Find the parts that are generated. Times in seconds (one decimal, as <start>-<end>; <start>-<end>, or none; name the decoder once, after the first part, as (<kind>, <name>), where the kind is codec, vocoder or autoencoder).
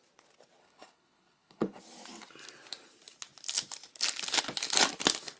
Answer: 0.6-1.8 (codec, HILCodec)